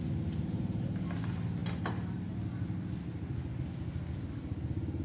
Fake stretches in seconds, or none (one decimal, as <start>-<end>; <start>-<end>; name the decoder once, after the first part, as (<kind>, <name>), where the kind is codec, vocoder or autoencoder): none